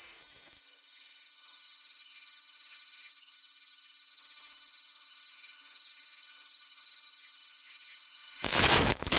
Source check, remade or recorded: remade